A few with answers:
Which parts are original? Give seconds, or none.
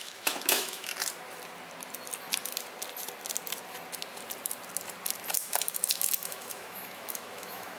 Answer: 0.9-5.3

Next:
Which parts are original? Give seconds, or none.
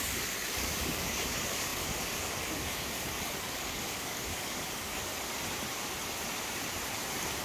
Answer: 5.1-7.4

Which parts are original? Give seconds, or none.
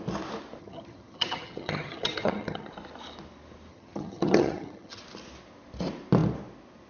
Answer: 0.0-0.6; 2.7-3.7; 5.0-6.9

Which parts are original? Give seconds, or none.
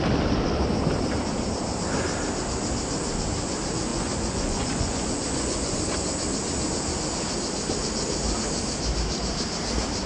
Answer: 0.0-3.9; 5.8-10.1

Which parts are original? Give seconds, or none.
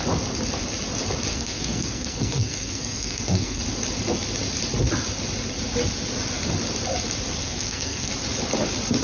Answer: 0.0-1.3; 3.6-7.4; 8.1-9.0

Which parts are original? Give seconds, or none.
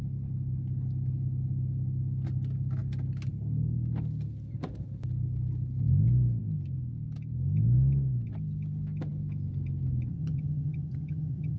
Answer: 0.0-10.1